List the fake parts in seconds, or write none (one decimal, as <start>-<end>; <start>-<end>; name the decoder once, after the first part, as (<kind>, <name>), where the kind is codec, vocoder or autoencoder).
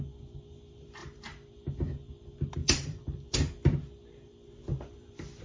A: 1.0-1.5 (vocoder, BigVGAN v2); 2.6-3.5; 4.7-5.4